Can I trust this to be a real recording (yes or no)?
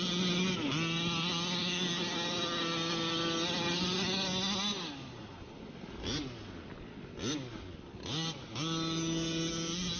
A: yes